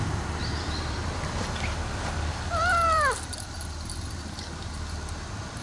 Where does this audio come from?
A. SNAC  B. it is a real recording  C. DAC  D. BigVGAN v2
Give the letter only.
D